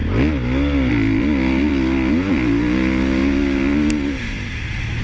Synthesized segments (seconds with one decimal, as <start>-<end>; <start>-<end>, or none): none